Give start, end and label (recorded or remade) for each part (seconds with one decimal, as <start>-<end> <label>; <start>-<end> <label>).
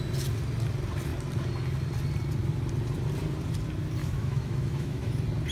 0.0-4.0 recorded; 4.0-5.1 remade; 5.1-5.5 recorded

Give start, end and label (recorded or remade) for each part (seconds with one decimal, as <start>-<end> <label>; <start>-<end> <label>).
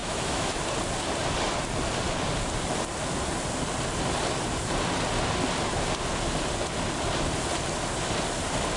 0.0-0.6 remade; 0.6-8.8 recorded